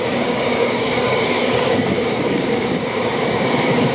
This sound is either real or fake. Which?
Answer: fake